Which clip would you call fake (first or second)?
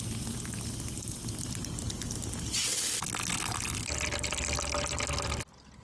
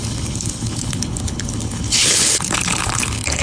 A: second